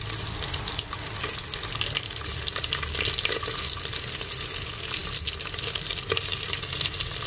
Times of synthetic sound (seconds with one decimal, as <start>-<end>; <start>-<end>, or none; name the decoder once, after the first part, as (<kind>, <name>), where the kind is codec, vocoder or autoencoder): none